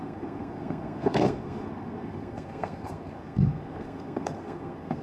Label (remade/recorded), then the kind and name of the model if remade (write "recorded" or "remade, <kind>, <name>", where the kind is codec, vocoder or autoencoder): remade, codec, SNAC